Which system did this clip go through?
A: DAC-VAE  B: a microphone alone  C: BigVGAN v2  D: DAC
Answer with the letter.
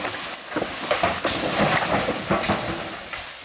B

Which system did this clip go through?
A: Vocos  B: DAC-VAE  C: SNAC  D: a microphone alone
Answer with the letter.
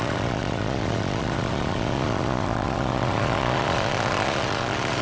A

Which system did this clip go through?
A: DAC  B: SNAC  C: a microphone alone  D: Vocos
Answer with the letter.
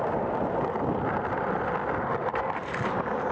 C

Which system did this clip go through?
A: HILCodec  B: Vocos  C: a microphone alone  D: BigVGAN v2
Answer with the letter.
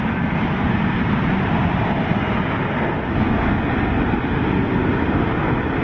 C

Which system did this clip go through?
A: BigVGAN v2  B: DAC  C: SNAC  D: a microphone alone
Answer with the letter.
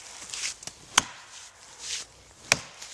D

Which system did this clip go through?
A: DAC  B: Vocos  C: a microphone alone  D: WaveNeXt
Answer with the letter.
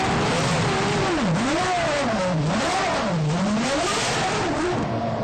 C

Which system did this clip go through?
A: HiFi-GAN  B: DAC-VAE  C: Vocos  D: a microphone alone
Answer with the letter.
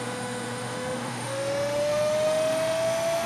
B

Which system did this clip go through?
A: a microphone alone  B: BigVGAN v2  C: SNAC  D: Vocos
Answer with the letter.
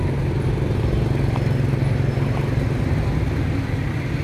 A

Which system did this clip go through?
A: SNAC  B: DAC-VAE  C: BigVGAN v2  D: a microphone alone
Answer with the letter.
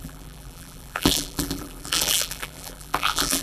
C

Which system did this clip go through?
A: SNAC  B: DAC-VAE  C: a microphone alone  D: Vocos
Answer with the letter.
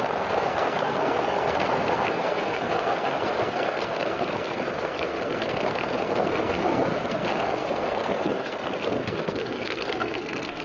A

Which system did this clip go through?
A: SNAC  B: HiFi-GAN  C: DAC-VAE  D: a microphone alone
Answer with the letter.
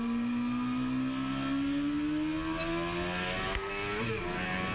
D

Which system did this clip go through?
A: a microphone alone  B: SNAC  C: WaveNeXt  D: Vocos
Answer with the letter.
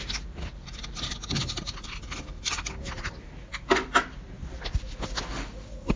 A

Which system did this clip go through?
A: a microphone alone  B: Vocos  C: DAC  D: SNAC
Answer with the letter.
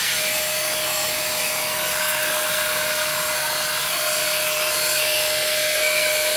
D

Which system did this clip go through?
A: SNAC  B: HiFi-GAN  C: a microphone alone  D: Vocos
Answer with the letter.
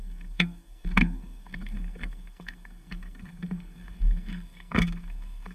A